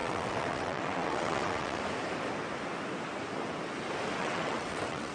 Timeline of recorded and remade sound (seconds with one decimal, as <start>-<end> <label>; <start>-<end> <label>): 0.0-1.8 remade; 1.8-4.2 recorded; 4.2-5.1 remade